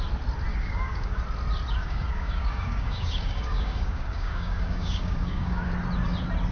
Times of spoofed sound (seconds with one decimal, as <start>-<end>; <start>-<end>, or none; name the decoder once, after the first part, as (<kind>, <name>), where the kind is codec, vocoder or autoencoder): 0.5-1.2 (codec, DAC); 1.8-5.7